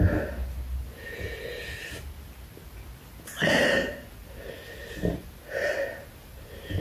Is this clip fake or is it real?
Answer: real